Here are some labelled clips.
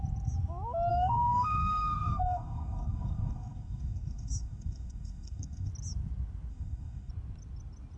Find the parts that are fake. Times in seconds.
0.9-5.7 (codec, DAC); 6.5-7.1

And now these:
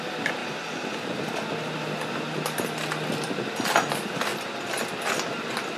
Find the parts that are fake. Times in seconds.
none

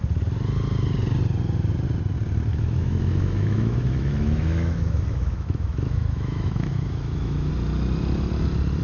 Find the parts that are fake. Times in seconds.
2.5-7.5 (autoencoder, DAC-VAE)